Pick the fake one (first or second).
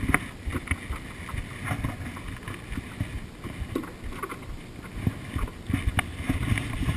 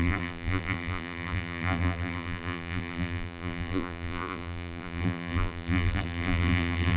second